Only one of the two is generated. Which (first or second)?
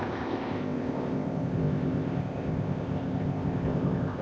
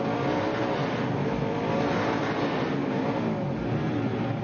first